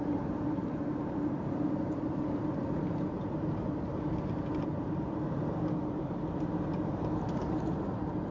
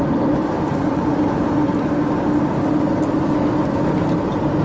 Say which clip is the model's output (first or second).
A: first